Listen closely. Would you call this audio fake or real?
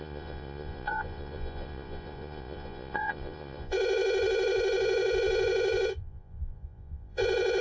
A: fake